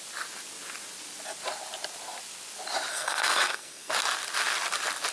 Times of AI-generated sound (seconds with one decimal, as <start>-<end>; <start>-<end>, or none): 2.9-3.9